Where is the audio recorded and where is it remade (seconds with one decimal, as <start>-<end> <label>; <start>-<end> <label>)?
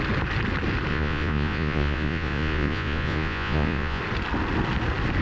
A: 0.0-0.9 recorded; 0.9-4.0 remade; 4.0-5.2 recorded